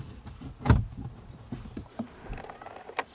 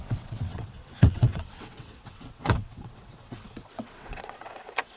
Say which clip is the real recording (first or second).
first